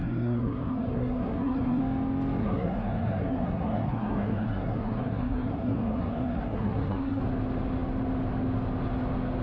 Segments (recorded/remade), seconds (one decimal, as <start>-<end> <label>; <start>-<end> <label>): 0.0-1.8 remade; 1.8-2.4 recorded; 2.4-7.2 remade; 7.2-9.4 recorded